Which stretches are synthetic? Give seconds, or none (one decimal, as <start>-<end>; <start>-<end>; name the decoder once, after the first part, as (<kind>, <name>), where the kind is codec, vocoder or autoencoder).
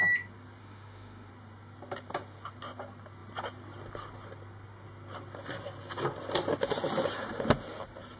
0.6-1.3 (autoencoder, DAC-VAE)